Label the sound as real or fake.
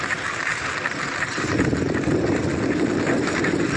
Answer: real